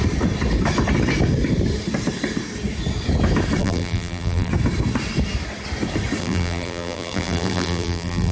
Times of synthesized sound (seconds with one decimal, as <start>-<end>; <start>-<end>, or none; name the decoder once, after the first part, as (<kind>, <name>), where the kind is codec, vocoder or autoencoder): 3.6-4.5 (vocoder, BigVGAN v2); 6.2-8.3